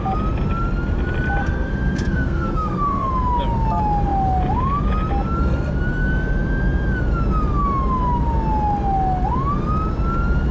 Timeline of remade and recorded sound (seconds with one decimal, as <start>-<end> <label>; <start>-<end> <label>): 0.0-1.4 recorded; 1.4-3.1 remade; 3.1-10.5 recorded